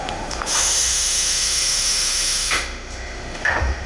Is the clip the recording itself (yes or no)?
no